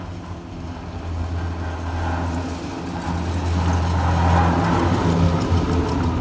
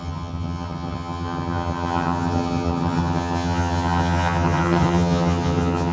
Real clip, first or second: first